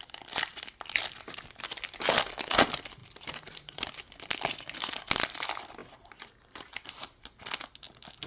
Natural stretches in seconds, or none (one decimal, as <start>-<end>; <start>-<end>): 0.0-3.0; 4.1-5.8; 7.2-8.3